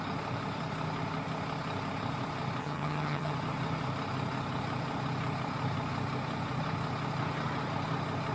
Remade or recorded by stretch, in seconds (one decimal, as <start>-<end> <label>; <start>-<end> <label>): 0.0-2.6 recorded; 2.6-3.3 remade; 3.3-8.3 recorded